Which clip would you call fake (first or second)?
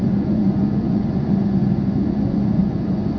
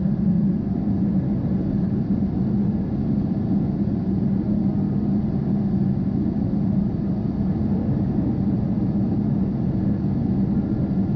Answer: first